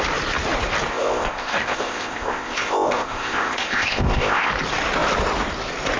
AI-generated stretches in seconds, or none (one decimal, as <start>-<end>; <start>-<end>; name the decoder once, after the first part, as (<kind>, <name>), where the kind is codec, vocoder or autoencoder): 0.9-4.5 (codec, ZipCodec)